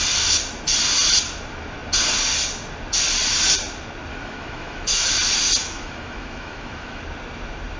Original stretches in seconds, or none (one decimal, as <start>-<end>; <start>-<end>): 0.0-4.1; 5.1-5.6; 7.0-7.8

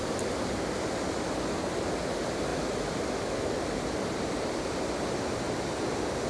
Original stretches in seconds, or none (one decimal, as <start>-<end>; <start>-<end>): 0.0-6.3

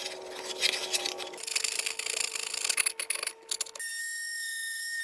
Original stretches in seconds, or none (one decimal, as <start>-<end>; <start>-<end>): 0.0-4.0

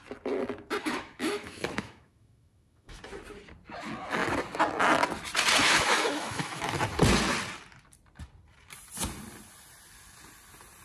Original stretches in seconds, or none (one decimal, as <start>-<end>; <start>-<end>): 0.0-0.8; 3.0-5.6; 6.6-10.8

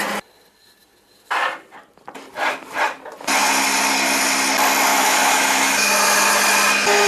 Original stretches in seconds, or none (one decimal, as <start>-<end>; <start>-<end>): 0.0-4.9; 5.9-7.1

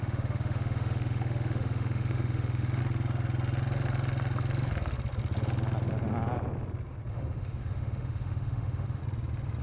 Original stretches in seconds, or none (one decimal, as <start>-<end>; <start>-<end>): 2.8-7.1; 9.0-9.6